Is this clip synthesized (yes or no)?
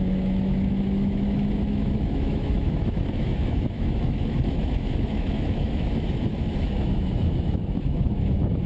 yes